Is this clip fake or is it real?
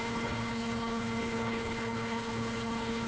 fake